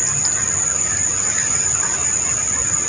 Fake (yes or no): no